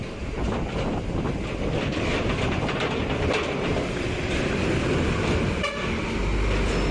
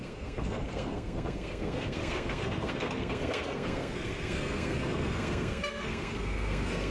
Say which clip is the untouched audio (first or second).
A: first